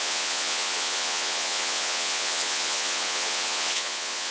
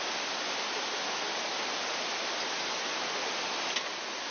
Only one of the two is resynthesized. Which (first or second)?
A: first